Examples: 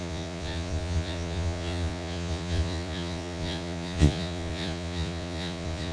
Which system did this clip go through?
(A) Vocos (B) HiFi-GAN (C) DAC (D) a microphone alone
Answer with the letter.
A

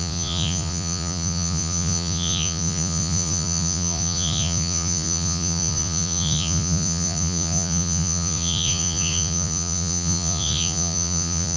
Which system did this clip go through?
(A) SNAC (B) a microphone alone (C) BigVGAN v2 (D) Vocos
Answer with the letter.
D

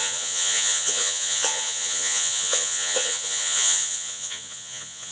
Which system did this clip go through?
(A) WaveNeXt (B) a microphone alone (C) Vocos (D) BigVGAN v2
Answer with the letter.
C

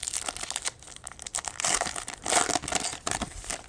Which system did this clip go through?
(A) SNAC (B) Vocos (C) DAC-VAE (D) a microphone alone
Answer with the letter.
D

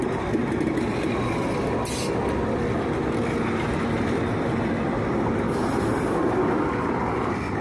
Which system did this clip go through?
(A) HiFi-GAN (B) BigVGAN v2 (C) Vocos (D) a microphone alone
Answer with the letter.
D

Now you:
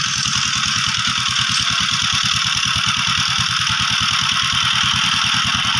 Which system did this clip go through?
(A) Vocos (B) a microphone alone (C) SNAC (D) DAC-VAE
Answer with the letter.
B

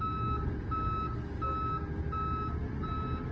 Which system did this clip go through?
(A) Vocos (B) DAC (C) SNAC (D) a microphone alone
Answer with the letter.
D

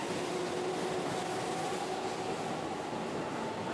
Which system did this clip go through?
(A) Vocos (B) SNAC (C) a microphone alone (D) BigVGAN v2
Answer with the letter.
C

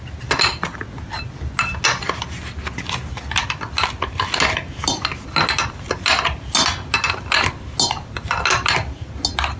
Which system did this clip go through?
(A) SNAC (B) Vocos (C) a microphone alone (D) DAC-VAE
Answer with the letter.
C